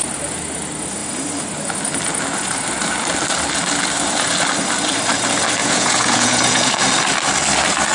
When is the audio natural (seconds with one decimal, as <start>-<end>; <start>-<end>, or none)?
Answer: 0.0-5.6; 6.7-7.9